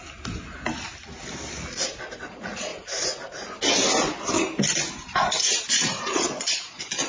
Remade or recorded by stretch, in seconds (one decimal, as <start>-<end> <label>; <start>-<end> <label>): 0.0-2.2 recorded; 2.2-2.7 remade; 2.7-5.6 recorded; 5.6-7.1 remade